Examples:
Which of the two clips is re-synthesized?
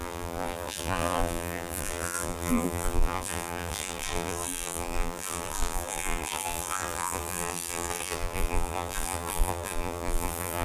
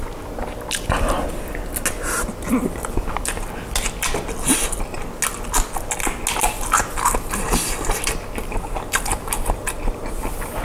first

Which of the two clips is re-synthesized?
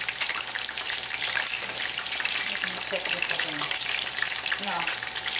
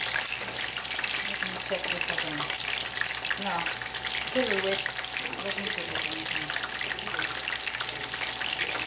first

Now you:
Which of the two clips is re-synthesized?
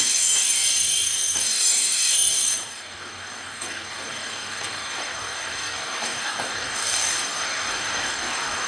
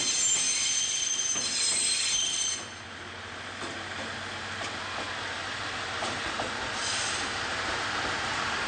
first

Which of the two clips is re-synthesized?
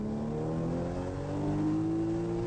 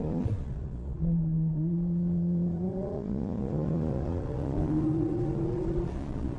second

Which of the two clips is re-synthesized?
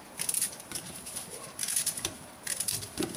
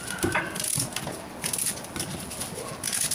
first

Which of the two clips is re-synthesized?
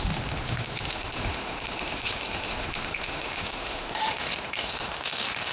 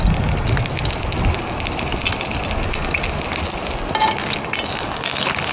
first